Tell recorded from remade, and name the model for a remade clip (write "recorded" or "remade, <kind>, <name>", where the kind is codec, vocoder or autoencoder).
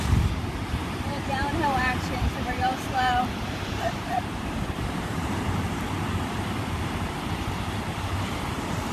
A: remade, vocoder, BigVGAN v2